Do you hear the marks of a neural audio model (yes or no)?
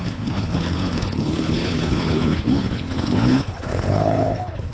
yes